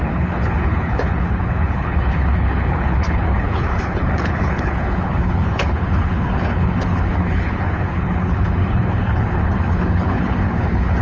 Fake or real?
fake